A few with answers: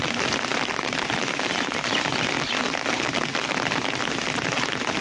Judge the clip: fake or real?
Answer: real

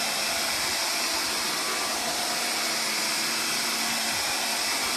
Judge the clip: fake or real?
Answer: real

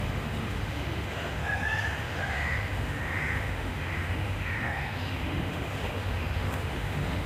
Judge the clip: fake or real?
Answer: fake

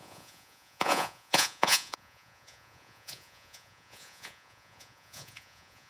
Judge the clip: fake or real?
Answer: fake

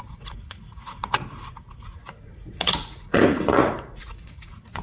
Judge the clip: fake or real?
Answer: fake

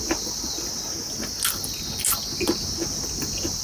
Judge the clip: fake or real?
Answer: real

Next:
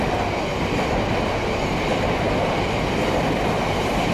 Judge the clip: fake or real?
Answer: real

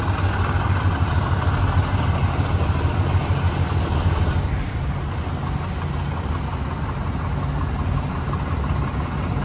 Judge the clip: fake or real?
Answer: real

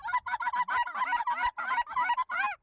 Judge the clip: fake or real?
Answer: real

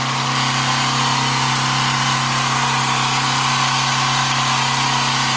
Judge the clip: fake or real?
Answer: real